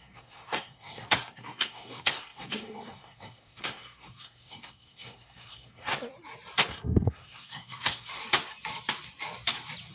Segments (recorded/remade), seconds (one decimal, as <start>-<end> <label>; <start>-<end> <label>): 0.0-5.9 remade; 5.9-6.7 recorded; 6.7-8.2 remade; 8.2-9.9 recorded